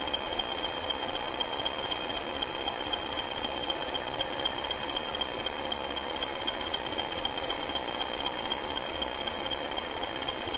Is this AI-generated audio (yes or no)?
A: yes